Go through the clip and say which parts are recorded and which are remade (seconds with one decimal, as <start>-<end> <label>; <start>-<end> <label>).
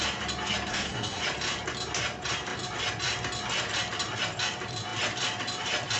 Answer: 0.0-0.7 recorded; 0.7-1.2 remade; 1.2-6.0 recorded